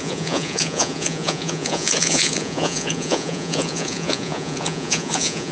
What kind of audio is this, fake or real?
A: fake